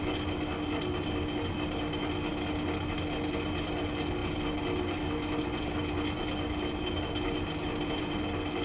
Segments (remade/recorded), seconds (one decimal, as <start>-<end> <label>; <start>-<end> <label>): 0.0-8.6 recorded